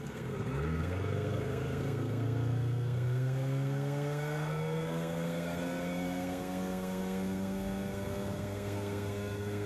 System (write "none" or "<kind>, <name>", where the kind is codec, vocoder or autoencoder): codec, SNAC